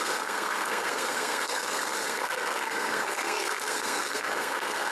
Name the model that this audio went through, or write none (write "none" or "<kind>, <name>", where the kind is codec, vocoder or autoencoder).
codec, SNAC